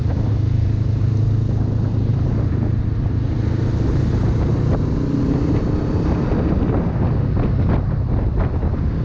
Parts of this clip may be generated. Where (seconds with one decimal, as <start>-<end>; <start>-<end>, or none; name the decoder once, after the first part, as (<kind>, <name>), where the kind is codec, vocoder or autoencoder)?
none